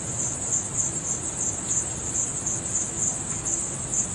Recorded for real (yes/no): yes